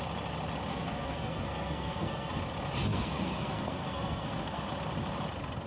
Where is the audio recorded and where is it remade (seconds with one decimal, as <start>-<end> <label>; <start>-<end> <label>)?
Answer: 0.0-0.7 recorded; 0.7-2.4 remade; 2.4-2.8 recorded; 2.8-4.6 remade; 4.6-5.7 recorded